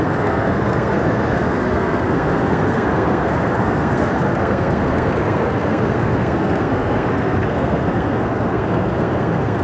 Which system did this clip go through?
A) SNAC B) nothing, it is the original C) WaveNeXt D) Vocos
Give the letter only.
A